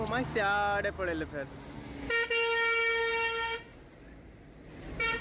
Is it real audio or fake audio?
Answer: real